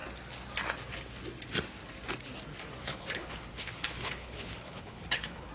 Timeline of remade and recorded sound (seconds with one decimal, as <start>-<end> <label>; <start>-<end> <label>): 0.0-2.8 recorded; 2.8-5.5 remade